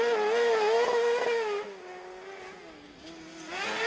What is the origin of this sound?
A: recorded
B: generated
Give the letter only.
A